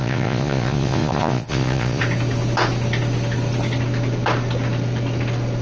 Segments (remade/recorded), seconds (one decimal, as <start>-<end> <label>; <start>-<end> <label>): 0.0-2.0 remade; 2.0-5.6 recorded